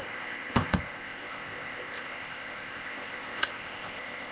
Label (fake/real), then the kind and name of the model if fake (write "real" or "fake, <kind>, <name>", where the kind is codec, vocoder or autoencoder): fake, codec, ZipCodec